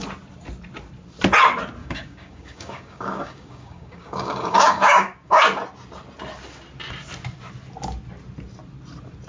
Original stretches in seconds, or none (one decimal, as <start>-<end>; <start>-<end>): 0.0-1.8; 5.4-9.3